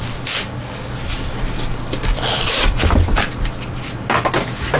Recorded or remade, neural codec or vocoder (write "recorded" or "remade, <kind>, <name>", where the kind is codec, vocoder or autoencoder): recorded